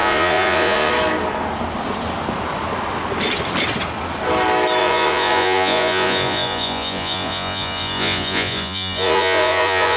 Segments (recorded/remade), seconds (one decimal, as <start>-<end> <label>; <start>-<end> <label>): 0.0-0.9 remade; 0.9-4.8 recorded; 4.8-10.0 remade